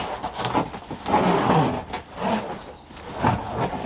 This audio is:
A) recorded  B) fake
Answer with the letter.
A